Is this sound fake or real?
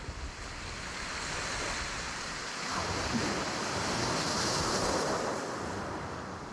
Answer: real